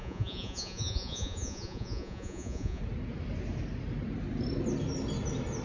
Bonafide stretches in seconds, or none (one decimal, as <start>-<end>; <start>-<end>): 2.8-5.6